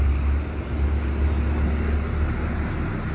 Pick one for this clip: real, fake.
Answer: real